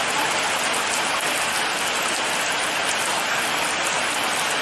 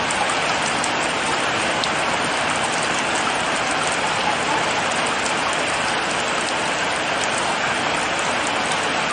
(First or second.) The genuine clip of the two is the first